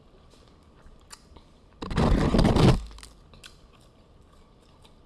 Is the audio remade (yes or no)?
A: no